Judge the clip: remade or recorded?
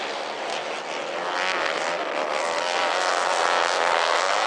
recorded